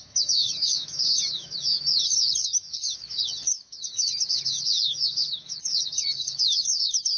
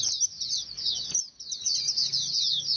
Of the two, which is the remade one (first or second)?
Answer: first